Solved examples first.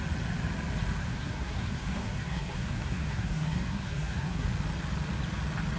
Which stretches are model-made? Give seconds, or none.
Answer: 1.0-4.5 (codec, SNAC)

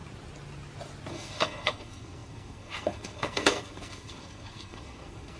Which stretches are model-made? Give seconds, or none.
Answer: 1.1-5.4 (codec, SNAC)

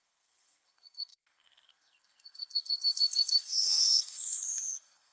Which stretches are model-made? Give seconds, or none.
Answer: 0.0-5.1 (codec, SNAC)

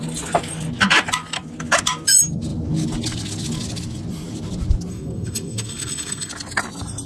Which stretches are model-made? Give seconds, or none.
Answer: 4.9-6.3 (codec, SNAC)

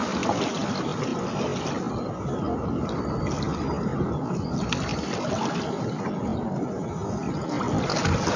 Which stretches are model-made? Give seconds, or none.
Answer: none

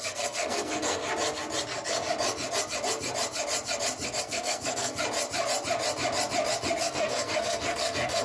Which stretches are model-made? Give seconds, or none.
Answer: 0.0-1.0 (codec, SNAC); 4.2-5.0; 6.8-8.2

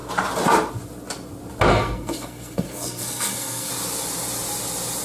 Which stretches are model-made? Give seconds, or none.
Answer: 1.7-3.7 (codec, SNAC)